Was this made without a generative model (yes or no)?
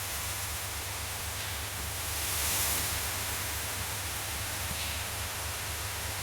no